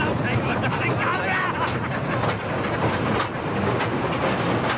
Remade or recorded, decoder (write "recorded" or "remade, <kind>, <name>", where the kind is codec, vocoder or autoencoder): recorded